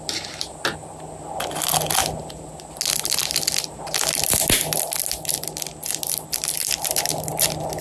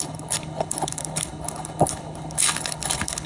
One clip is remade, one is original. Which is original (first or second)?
first